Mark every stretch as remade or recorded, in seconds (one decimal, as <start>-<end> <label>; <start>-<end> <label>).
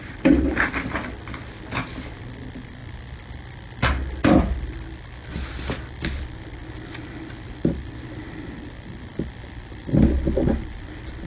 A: 0.0-11.3 recorded